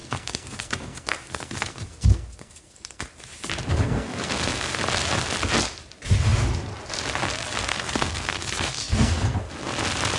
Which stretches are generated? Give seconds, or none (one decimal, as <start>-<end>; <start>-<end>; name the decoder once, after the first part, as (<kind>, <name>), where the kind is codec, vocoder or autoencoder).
0.0-3.0 (codec, SNAC); 3.7-4.8; 7.7-9.5